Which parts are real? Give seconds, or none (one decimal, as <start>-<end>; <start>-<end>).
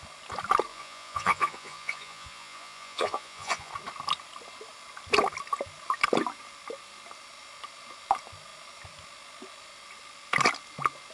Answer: 0.0-0.7; 3.7-11.1